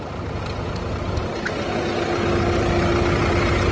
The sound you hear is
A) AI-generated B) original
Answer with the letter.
B